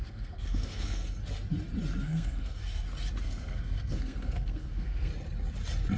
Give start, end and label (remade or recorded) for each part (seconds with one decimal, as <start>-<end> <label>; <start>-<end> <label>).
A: 0.0-1.2 remade; 1.2-2.0 recorded; 2.0-2.6 remade; 2.6-3.2 recorded; 3.2-5.1 remade; 5.1-6.0 recorded